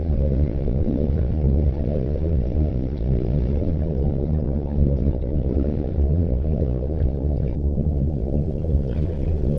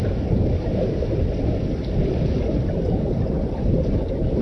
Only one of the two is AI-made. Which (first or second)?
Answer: first